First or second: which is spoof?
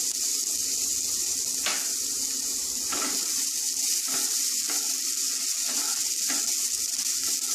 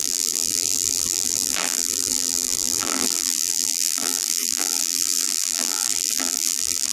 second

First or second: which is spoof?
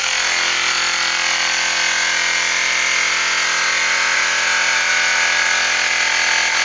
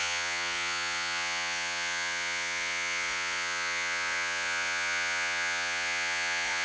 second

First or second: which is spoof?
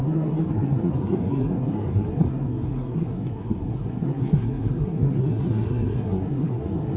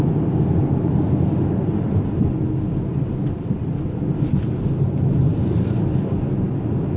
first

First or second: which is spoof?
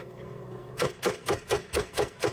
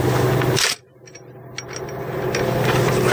first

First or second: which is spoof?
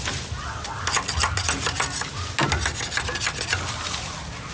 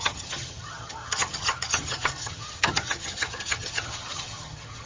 second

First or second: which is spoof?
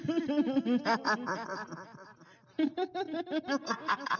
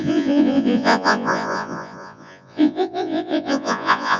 second